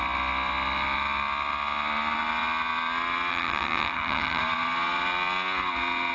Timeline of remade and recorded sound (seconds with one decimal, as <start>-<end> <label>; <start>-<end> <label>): 0.0-3.3 recorded; 3.3-4.4 remade; 4.4-6.1 recorded